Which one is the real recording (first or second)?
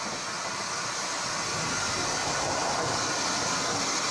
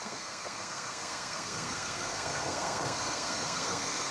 first